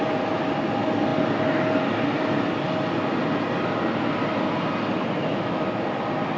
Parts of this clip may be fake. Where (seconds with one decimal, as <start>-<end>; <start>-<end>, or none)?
5.2-5.7